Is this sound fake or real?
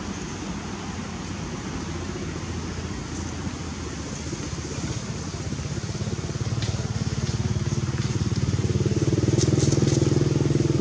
real